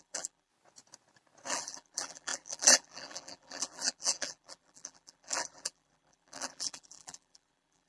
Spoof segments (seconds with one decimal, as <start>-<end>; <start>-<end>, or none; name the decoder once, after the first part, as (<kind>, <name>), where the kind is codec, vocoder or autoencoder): 0.0-0.5 (vocoder, BigVGAN v2); 1.5-7.9